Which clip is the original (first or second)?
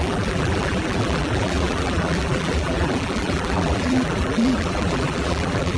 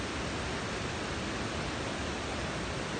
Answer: second